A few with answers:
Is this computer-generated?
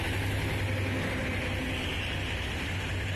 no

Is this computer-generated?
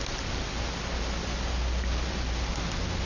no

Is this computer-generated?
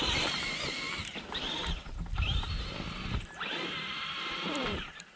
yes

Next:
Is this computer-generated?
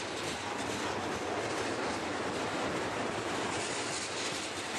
no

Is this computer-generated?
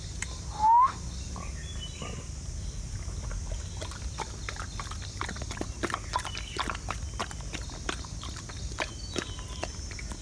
no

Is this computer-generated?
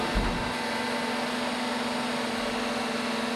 no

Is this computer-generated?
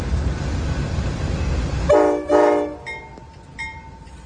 no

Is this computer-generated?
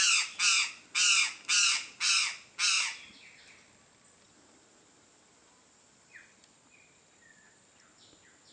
no